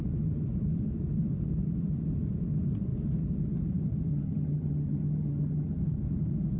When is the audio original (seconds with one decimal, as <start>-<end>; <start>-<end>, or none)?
0.0-4.1; 5.8-6.6